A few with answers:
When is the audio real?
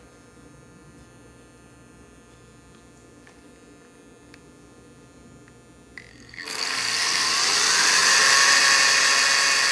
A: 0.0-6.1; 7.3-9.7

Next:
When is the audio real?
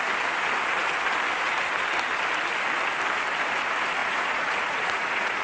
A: 0.0-4.0